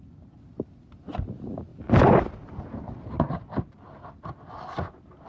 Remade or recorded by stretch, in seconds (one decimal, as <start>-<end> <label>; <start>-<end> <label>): 0.0-5.3 recorded